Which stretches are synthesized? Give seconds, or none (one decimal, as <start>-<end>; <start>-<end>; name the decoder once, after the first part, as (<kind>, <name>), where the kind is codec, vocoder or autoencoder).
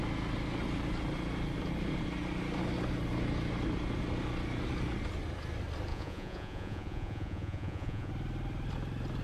5.9-8.1 (vocoder, Vocos)